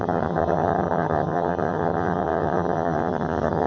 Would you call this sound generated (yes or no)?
yes